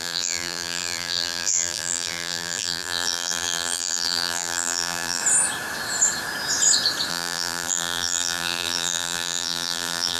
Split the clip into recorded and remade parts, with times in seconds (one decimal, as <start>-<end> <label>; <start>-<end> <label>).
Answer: 0.0-5.2 remade; 5.2-7.1 recorded; 7.1-10.2 remade